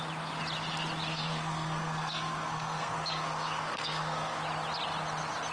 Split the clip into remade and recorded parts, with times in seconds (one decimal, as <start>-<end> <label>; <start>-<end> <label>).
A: 0.0-1.1 recorded; 1.1-4.4 remade; 4.4-5.5 recorded